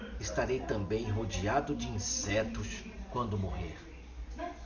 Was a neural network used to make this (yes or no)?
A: no